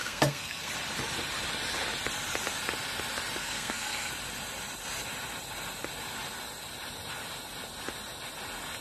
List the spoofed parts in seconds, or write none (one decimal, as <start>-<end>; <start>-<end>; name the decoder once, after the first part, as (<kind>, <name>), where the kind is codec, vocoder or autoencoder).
0.0-0.7 (codec, SNAC); 3.4-4.1